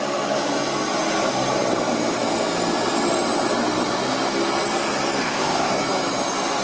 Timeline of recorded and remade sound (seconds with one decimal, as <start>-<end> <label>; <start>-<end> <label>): 0.0-5.2 recorded; 5.2-5.7 remade; 5.7-6.6 recorded

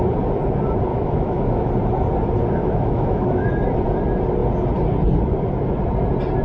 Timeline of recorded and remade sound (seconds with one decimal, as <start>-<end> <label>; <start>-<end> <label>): 0.0-0.9 recorded; 0.9-1.7 remade; 1.7-2.6 recorded; 2.6-3.5 remade; 3.5-6.4 recorded

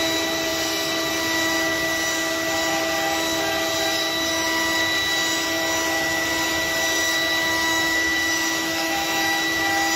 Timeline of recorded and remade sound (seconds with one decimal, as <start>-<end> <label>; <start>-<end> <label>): 0.0-7.4 recorded; 7.4-9.6 remade; 9.6-10.0 recorded

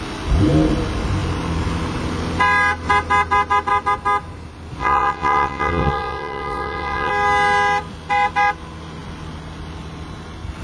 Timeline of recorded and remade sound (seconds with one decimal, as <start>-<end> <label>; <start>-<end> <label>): 0.0-4.8 recorded; 4.8-7.1 remade; 7.1-10.6 recorded